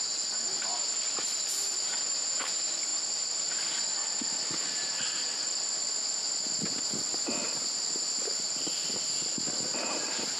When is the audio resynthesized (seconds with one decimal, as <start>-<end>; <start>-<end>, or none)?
none